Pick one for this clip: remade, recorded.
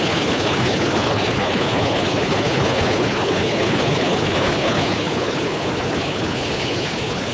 remade